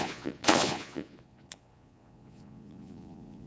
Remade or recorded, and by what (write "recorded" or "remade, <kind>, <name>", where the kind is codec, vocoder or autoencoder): remade, vocoder, Vocos